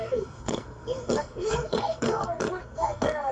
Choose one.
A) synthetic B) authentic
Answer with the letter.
A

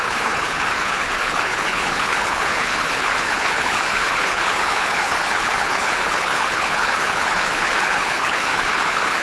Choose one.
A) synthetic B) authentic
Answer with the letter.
A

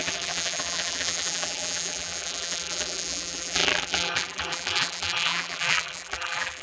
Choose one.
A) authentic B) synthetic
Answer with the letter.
B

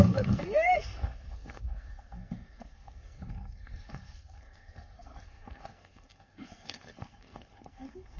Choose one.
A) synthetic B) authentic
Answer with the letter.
A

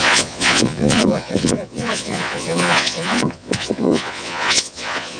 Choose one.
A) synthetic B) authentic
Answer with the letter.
A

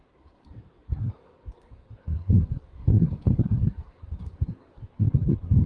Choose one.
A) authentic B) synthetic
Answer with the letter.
B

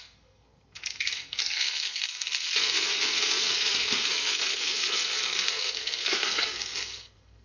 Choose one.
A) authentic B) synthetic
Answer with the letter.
B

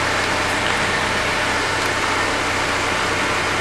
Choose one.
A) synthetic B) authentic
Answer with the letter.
B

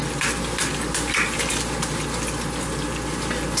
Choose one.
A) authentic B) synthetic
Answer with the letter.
A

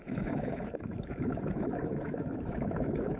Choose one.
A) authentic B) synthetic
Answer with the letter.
B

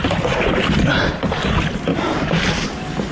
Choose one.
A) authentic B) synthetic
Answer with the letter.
A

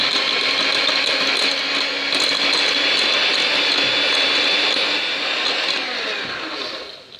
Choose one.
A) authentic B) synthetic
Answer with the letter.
A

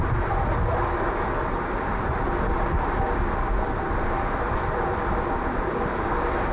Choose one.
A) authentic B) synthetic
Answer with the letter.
A